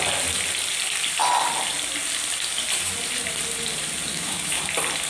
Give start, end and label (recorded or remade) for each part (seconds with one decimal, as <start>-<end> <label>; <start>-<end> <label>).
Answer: 0.0-4.1 recorded; 4.1-4.6 remade; 4.6-5.1 recorded